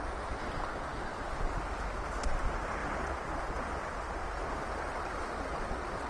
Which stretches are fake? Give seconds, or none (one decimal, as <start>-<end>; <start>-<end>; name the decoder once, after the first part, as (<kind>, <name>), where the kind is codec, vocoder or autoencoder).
0.0-1.1 (vocoder, BigVGAN v2); 1.8-2.8; 3.6-4.4; 5.1-6.1